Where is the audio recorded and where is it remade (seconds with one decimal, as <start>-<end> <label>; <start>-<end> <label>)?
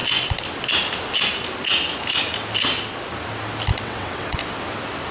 0.0-3.7 recorded; 3.7-4.4 remade; 4.4-5.1 recorded